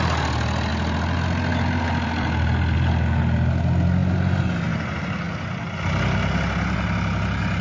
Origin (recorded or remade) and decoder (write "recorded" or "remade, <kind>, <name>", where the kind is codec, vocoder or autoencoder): recorded